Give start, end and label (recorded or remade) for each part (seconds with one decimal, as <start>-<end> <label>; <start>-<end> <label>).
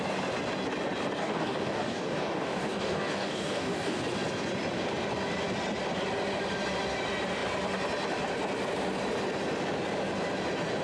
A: 0.0-1.2 recorded; 1.2-4.0 remade; 4.0-10.8 recorded